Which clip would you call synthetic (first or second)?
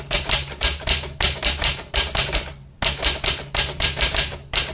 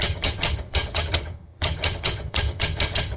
second